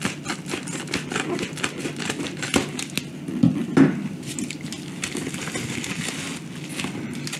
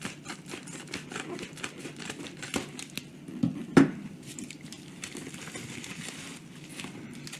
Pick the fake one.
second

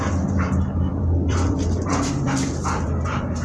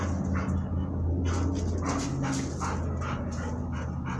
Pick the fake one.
first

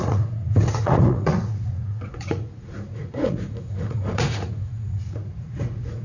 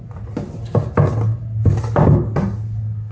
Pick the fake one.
first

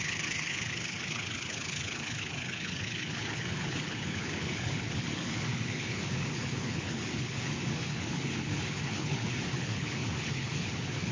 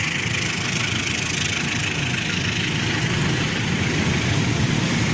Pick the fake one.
first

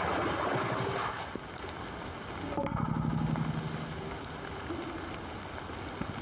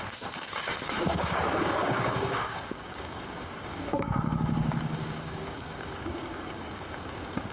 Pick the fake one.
second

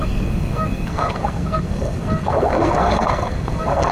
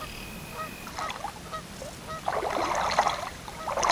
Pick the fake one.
first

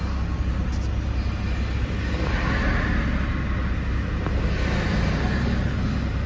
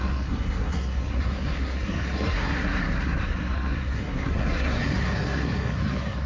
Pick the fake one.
second